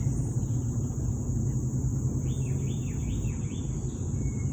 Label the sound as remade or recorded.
recorded